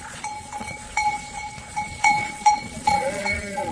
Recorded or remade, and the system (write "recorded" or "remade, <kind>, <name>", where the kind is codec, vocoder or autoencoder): remade, vocoder, Vocos